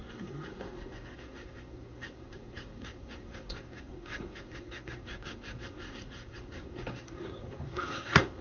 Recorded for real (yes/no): no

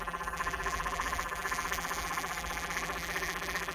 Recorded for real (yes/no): no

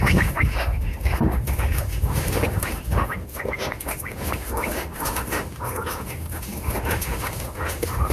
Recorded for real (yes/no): no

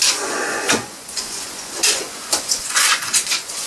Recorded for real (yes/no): no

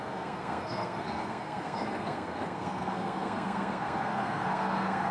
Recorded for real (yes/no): no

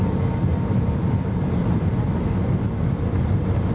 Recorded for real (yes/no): no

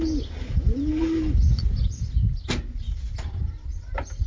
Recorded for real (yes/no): yes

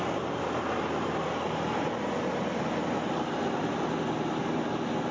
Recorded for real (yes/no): yes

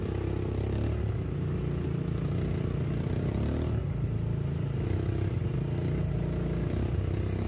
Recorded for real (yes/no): yes